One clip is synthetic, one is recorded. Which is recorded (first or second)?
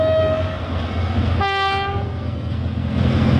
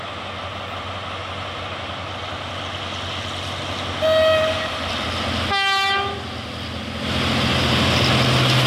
second